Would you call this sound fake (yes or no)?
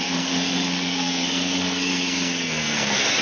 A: yes